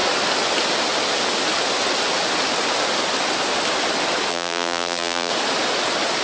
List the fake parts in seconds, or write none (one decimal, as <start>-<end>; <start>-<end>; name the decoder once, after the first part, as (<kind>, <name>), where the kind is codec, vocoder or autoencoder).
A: 4.3-5.3 (vocoder, BigVGAN v2)